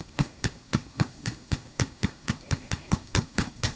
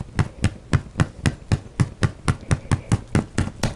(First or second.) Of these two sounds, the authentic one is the second